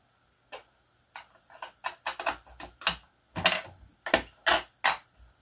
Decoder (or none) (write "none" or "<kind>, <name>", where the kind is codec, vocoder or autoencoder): none